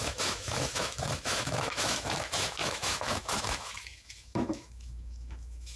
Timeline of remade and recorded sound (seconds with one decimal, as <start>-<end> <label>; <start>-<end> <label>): 0.0-5.8 remade